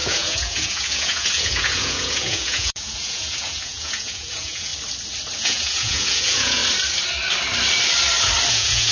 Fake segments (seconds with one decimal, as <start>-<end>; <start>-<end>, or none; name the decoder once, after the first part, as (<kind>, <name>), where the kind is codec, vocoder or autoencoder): 0.0-4.7 (vocoder, Vocos); 5.4-6.6; 8.5-8.9